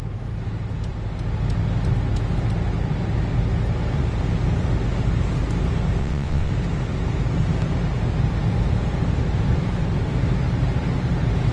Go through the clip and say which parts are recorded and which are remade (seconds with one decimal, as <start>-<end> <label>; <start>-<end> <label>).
0.0-6.0 recorded; 6.0-6.5 remade; 6.5-11.5 recorded